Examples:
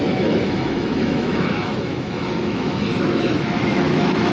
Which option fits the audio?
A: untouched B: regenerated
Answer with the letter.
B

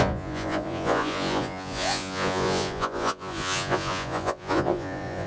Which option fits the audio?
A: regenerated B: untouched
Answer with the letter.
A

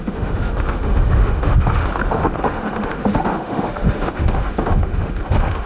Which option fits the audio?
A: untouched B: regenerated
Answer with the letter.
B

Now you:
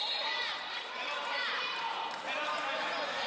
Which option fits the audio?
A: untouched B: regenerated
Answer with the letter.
B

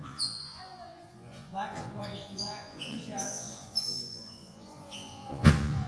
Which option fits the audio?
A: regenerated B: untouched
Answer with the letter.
A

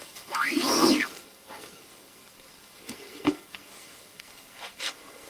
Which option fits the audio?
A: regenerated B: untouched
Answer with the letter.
A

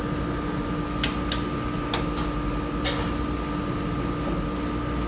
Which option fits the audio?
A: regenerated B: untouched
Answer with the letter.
B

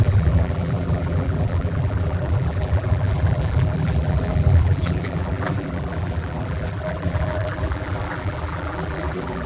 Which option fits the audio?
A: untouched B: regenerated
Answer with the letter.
B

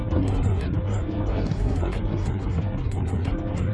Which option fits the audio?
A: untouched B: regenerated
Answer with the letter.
B